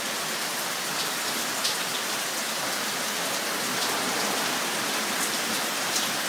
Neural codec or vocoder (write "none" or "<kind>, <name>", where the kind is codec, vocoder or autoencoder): vocoder, BigVGAN v2